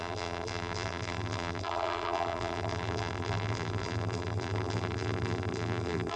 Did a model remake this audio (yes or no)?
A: yes